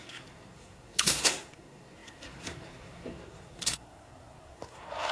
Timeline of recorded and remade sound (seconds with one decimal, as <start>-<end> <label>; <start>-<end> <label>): 0.0-5.1 remade